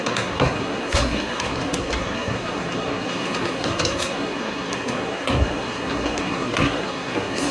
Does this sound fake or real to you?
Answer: fake